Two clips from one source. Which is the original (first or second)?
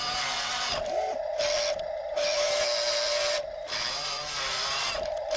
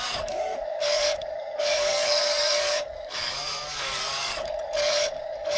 first